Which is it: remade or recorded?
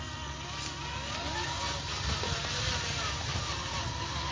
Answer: recorded